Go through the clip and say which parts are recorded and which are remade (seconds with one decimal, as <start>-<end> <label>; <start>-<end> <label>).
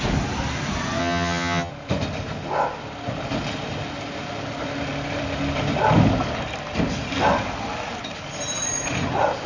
0.0-1.0 recorded; 1.0-1.7 remade; 1.7-9.5 recorded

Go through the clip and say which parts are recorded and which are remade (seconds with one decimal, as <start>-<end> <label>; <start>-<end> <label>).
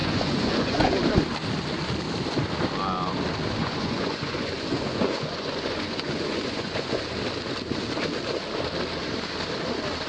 0.0-0.9 remade; 0.9-3.6 recorded; 3.6-7.0 remade; 7.0-10.1 recorded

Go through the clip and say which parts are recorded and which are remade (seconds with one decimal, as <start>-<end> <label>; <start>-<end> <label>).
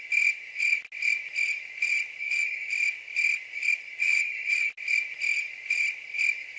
0.0-2.2 recorded; 2.2-2.7 remade; 2.7-4.0 recorded; 4.0-4.7 remade; 4.7-6.6 recorded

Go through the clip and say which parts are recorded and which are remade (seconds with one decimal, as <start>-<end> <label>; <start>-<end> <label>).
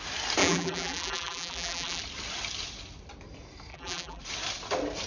0.0-0.4 recorded; 0.4-2.0 remade; 2.0-3.7 recorded; 3.7-4.2 remade; 4.2-5.1 recorded